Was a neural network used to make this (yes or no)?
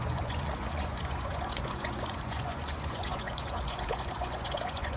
yes